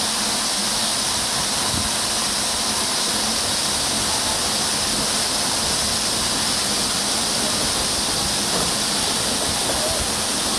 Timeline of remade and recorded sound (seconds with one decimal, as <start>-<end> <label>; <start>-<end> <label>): 0.0-10.6 recorded